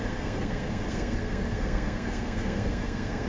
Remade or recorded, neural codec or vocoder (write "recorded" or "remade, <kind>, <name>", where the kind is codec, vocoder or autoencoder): remade, codec, SNAC